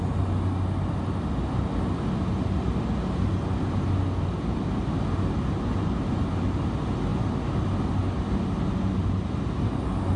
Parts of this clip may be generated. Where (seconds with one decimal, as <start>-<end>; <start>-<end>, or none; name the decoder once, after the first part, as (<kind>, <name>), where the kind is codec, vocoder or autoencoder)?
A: none